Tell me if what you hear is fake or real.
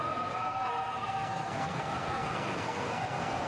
fake